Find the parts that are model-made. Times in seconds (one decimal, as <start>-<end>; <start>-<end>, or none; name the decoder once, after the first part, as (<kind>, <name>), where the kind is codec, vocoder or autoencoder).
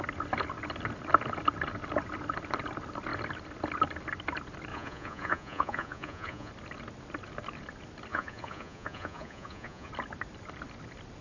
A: 4.7-6.5 (vocoder, Vocos); 8.1-9.9